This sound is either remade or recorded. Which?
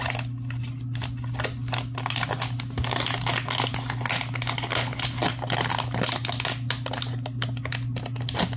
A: recorded